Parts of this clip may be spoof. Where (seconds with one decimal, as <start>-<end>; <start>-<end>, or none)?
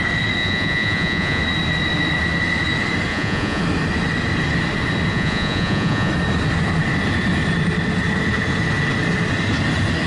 0.4-1.4; 3.1-3.6; 5.1-6.1